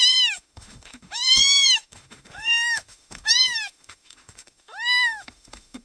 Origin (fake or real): fake